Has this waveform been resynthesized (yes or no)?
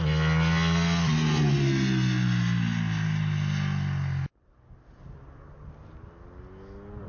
no